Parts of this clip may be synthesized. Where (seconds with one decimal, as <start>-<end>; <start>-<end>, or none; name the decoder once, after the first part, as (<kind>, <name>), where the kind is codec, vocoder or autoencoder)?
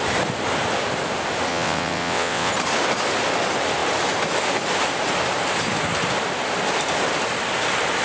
1.5-2.5 (vocoder, WaveNeXt)